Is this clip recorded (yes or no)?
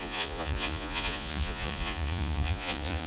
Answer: no